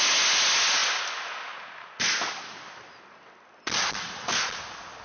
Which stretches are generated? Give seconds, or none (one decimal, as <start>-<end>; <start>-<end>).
none

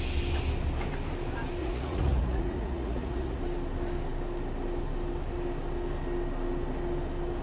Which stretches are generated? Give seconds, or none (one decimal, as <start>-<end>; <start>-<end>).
1.6-3.4

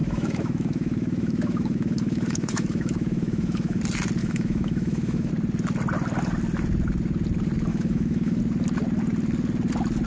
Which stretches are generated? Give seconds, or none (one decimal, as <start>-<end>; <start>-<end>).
0.0-3.8; 4.2-5.3; 7.7-8.4

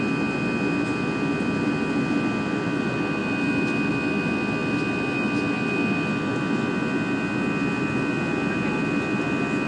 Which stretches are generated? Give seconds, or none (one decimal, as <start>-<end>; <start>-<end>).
none

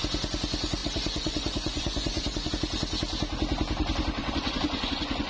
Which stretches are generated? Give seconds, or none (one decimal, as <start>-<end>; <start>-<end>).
0.8-2.5; 4.2-5.3

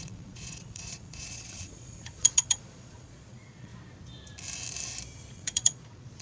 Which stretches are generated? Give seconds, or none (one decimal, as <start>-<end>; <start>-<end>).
0.0-3.7; 5.3-6.2

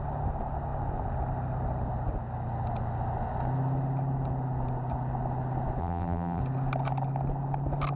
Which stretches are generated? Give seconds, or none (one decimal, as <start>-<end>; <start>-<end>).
5.8-6.4

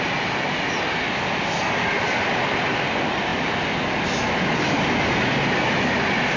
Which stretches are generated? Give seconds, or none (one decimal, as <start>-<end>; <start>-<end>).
none